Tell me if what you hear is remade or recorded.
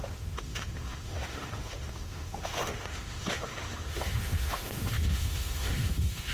remade